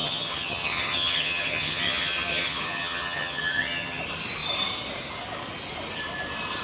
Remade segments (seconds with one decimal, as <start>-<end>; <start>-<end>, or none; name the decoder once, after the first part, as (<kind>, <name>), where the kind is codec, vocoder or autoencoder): 0.0-4.0 (vocoder, HiFi-GAN)